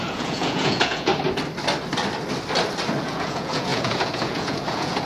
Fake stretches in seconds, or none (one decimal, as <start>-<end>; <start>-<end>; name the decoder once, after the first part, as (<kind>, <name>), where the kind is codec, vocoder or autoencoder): 0.0-1.1 (vocoder, Vocos); 3.0-5.1